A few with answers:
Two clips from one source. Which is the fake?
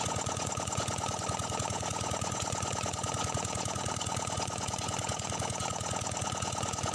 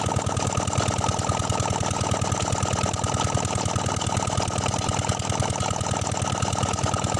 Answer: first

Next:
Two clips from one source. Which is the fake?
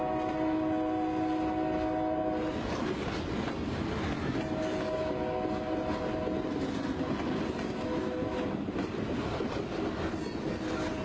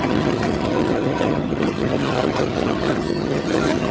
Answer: second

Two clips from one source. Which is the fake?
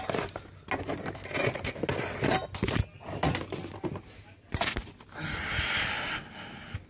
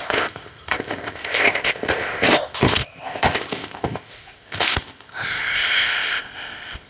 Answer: second